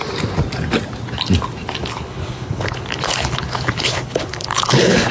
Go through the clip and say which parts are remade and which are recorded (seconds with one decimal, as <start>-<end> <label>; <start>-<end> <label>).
0.0-1.8 recorded; 1.8-5.1 remade